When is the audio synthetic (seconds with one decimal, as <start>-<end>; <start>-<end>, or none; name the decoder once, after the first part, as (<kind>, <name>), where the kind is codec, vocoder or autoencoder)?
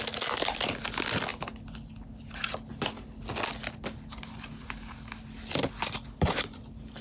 none